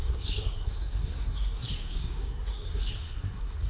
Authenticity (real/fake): fake